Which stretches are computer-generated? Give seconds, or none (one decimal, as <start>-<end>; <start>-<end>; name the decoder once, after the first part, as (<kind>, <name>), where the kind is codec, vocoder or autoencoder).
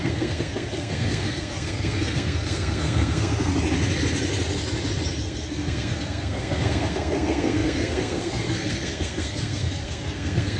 0.0-3.5 (codec, SNAC); 5.2-10.6